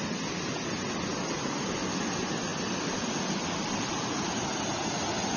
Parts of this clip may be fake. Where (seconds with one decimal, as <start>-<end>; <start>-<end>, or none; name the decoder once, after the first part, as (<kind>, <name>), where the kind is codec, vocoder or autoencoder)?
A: none